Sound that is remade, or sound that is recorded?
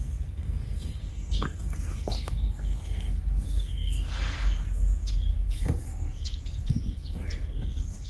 remade